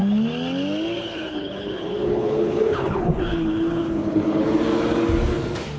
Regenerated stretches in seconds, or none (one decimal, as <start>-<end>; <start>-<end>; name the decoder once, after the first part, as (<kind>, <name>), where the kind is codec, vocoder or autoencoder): 1.0-4.5 (codec, HILCodec)

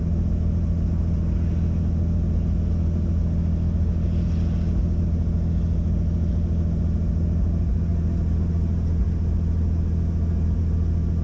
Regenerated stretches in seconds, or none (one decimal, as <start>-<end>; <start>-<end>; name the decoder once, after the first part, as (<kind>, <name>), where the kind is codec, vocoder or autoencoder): none

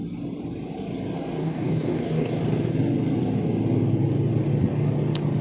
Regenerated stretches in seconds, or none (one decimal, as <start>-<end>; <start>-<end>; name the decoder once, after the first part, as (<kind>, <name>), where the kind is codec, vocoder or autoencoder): 1.4-2.4 (codec, DAC)